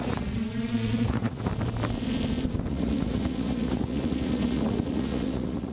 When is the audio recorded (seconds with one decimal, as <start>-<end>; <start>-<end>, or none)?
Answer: 1.5-2.7